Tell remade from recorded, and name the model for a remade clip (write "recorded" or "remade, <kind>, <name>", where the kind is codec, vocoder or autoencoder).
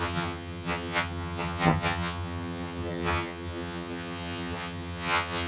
remade, vocoder, HiFi-GAN